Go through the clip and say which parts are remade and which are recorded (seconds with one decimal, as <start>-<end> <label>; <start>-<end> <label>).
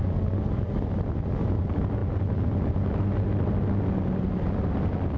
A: 0.0-5.2 recorded